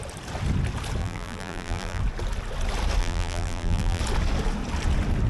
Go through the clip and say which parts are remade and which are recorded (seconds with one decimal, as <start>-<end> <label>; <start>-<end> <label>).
0.0-1.0 recorded; 1.0-2.0 remade; 2.0-3.0 recorded; 3.0-4.0 remade; 4.0-5.3 recorded